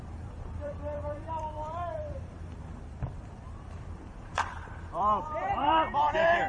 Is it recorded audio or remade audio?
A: remade